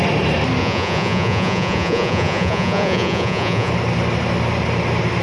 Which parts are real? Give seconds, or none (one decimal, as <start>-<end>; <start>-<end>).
0.0-0.6; 3.7-5.2